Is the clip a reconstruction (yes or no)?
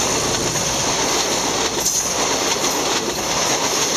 no